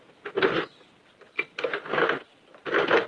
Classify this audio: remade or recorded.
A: recorded